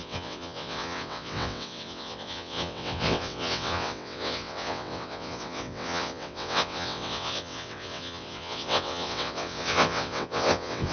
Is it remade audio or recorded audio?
remade